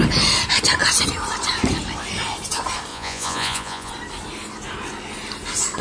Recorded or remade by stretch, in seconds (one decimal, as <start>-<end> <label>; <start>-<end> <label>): 0.0-2.9 recorded; 2.9-3.9 remade; 3.9-5.8 recorded